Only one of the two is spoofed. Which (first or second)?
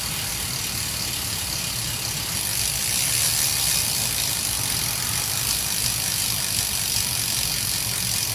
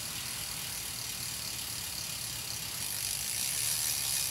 first